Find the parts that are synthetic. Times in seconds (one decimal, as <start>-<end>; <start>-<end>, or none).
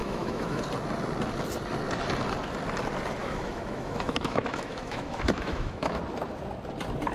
0.0-0.6; 3.2-6.0